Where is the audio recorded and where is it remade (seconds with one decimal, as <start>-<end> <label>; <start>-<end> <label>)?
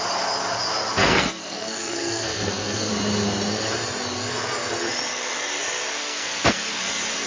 0.0-1.0 recorded; 1.0-2.9 remade; 2.9-6.0 recorded; 6.0-6.8 remade; 6.8-7.3 recorded